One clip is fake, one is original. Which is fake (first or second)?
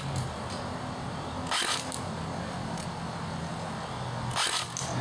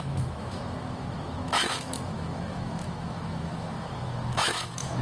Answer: second